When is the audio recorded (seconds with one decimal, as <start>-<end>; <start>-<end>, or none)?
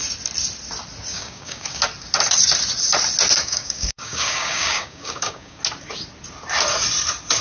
0.0-1.1; 1.8-3.4; 5.6-7.4